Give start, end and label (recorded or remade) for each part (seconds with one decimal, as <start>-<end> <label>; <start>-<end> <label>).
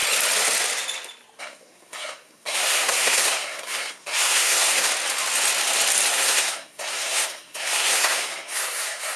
0.0-1.4 recorded; 1.4-4.9 remade; 4.9-6.1 recorded; 6.1-9.2 remade